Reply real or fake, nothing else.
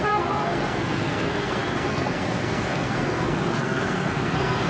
fake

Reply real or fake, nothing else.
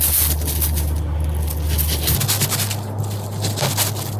real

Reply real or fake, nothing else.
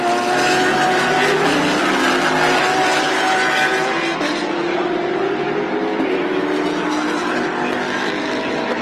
real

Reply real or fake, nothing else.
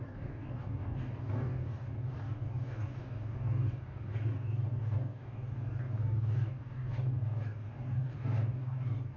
fake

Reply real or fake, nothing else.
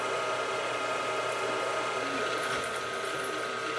real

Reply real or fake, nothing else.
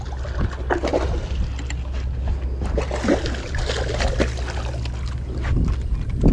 real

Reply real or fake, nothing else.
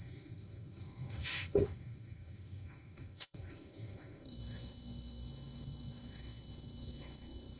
fake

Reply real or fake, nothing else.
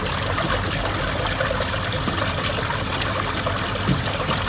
real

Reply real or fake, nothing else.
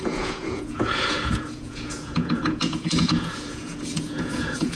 fake